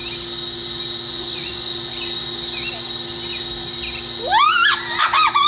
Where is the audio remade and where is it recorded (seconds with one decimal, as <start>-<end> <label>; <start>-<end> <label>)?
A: 0.0-1.1 recorded; 1.1-1.7 remade; 1.7-5.0 recorded; 5.0-5.5 remade